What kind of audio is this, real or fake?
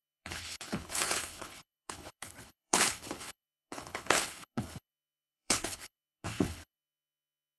fake